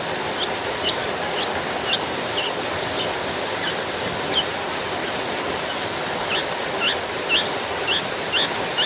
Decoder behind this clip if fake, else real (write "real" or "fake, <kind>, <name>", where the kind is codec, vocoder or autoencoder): real